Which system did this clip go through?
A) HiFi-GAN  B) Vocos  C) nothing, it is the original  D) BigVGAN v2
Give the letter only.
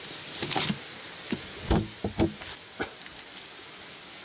C